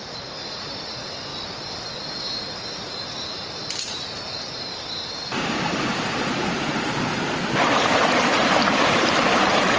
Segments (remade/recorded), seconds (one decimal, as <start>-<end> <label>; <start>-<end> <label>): 0.0-1.3 remade; 1.3-3.8 recorded; 3.8-5.3 remade; 5.3-5.9 recorded; 5.9-9.8 remade